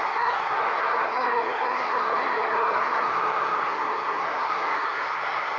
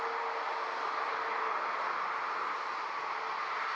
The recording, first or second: second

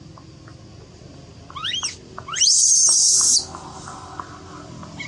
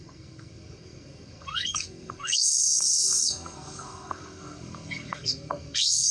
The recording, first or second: first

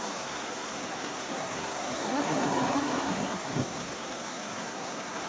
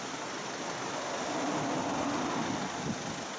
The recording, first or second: second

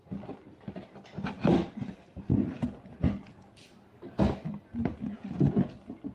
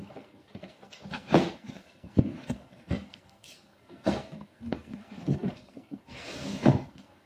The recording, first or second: first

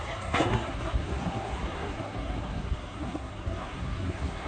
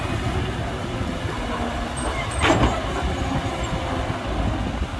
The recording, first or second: second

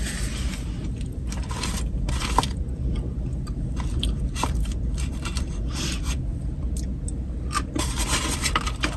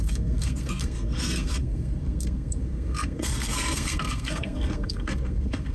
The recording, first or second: first